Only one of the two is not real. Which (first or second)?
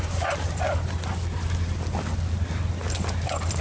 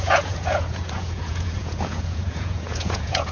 second